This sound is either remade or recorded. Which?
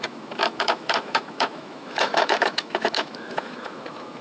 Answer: remade